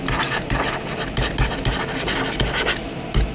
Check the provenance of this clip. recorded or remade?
recorded